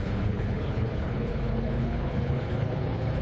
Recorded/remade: remade